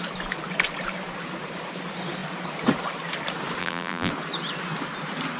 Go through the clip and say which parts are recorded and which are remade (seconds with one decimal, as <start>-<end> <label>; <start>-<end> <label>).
0.0-3.6 recorded; 3.6-4.1 remade; 4.1-5.4 recorded